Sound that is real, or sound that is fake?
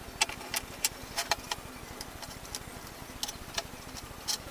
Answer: real